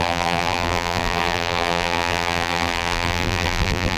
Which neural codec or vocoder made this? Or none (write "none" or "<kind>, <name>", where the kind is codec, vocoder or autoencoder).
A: vocoder, BigVGAN v2